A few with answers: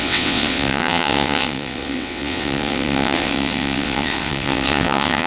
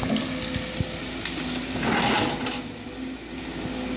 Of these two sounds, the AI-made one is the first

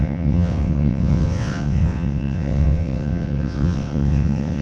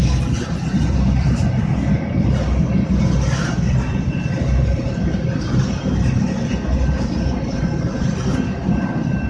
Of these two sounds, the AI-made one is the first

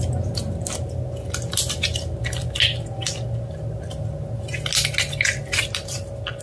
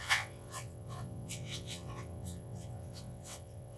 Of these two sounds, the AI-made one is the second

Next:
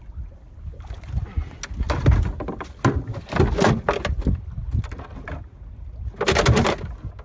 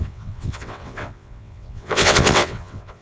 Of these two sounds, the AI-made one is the second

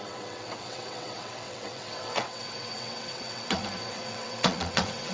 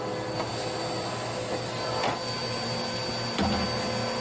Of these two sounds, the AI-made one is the first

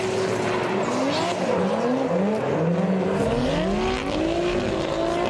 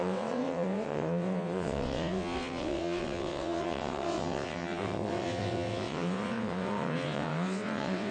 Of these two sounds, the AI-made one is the second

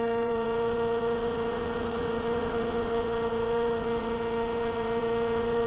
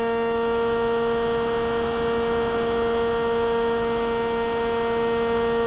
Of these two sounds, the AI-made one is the first